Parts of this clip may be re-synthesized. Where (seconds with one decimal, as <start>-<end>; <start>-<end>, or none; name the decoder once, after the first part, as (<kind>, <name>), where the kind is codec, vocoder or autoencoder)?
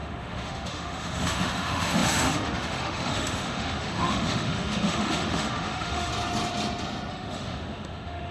0.0-6.1 (autoencoder, DAC-VAE); 7.1-8.3